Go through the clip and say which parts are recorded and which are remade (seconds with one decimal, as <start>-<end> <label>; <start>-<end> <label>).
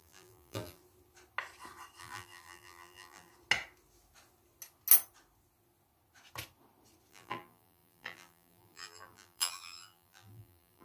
0.0-0.8 remade; 0.8-2.0 recorded; 2.0-3.3 remade; 3.3-7.1 recorded; 7.1-10.8 remade